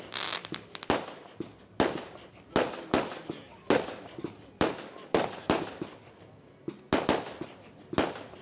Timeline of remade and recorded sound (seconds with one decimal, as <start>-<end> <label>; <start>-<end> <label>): 0.0-8.4 recorded

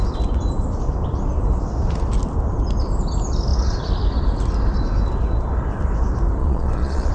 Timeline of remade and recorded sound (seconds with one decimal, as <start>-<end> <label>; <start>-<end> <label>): 0.0-6.4 recorded; 6.4-7.1 remade

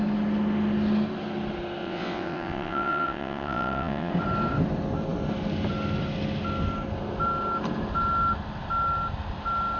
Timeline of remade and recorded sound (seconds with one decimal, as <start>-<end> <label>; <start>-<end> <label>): 0.0-1.8 recorded; 1.8-4.1 remade; 4.1-9.8 recorded

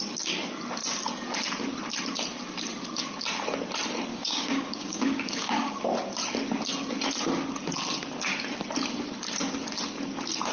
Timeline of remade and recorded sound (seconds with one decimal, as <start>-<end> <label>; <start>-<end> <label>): 0.0-4.1 recorded; 4.1-5.8 remade; 5.8-10.5 recorded

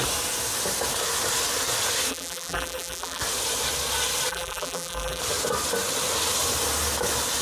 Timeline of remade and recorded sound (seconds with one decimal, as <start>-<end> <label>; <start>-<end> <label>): 0.0-2.1 recorded; 2.1-3.2 remade; 3.2-4.3 recorded; 4.3-5.2 remade; 5.2-7.4 recorded

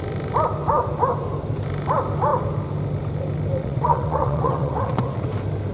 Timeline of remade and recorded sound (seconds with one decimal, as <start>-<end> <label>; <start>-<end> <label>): 0.0-3.6 recorded; 3.6-5.3 remade; 5.3-5.7 recorded

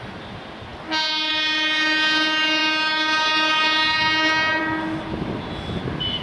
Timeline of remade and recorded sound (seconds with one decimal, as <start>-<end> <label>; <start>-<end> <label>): 0.0-6.2 recorded